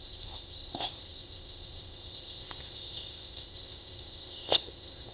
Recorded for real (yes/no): no